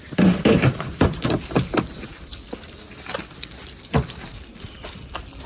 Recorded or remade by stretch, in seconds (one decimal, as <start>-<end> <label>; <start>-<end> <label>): 0.0-2.3 remade; 2.3-5.5 recorded